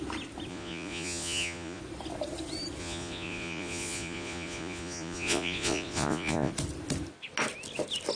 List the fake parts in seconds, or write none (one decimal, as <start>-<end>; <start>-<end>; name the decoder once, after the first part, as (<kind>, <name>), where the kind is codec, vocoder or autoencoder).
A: 0.5-1.8 (vocoder, Vocos); 2.8-6.5